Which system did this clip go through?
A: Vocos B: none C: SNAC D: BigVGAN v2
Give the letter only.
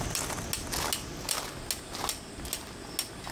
B